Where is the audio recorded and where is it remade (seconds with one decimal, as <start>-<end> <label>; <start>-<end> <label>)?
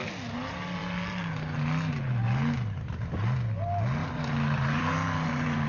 0.0-4.0 recorded; 4.0-5.7 remade